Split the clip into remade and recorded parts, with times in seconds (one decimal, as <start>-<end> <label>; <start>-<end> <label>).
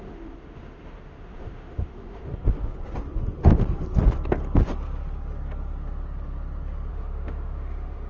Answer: 0.0-2.3 remade; 2.3-6.9 recorded; 6.9-8.1 remade